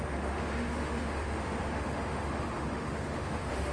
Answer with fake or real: fake